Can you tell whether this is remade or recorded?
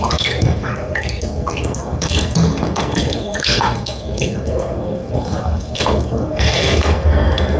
remade